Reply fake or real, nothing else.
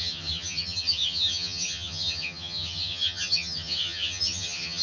fake